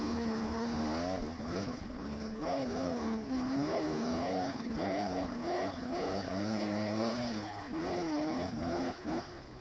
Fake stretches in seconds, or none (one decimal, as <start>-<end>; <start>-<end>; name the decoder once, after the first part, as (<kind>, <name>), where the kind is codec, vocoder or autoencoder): 0.0-0.8 (codec, HILCodec); 1.4-9.6